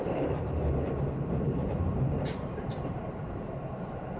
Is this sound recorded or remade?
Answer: remade